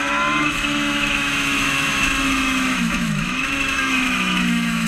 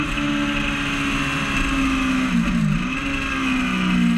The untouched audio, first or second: second